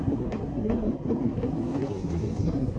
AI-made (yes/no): yes